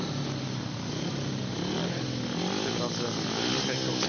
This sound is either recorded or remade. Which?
recorded